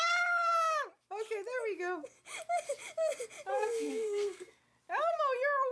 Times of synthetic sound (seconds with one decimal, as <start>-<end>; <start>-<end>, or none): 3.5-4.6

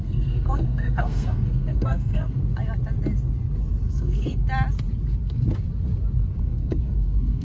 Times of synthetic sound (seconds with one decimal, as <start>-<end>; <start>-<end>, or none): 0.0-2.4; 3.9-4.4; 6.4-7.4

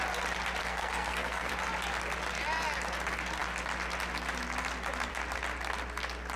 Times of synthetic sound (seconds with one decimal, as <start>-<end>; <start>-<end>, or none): 0.6-1.5